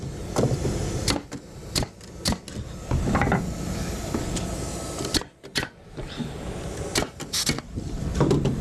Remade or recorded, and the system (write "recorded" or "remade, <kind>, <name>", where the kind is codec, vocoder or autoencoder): recorded